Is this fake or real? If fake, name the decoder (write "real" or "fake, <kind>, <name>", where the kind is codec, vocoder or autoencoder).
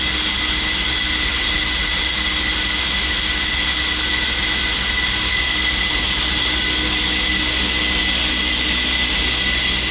real